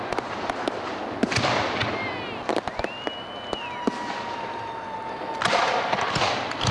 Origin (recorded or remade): recorded